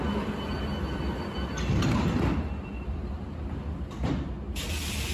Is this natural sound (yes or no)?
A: no